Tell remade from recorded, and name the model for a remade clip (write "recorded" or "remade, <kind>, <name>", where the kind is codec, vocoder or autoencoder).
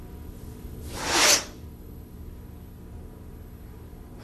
recorded